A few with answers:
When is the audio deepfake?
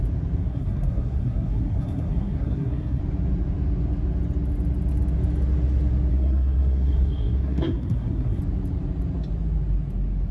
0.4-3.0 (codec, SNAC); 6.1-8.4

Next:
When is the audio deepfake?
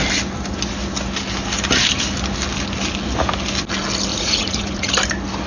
4.1-4.9 (vocoder, Vocos)